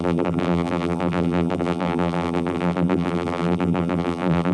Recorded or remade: remade